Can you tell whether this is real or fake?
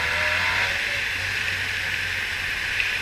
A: real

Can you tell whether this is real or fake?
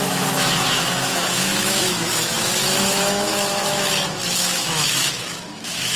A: fake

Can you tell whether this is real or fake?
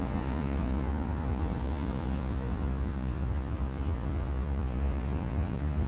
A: fake